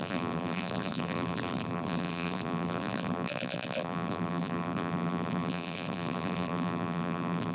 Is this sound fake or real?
fake